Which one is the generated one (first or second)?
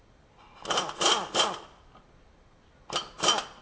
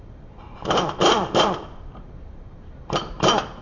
second